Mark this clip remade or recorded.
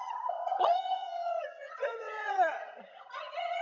remade